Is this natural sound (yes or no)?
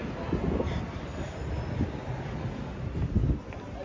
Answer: yes